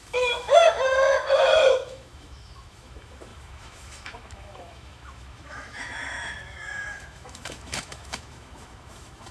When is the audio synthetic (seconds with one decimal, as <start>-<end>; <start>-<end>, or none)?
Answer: 0.0-9.3